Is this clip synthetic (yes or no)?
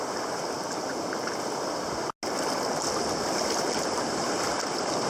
no